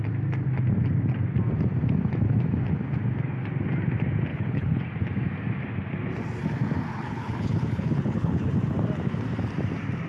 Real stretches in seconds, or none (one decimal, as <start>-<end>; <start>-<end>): 0.0-4.3; 4.8-6.9; 8.5-10.1